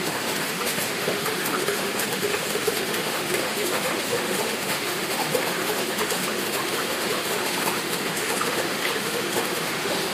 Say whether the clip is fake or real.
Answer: fake